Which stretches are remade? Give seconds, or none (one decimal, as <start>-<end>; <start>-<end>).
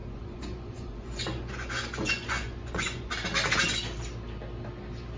0.0-3.1